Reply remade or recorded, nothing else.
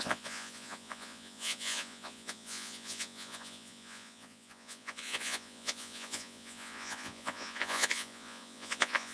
remade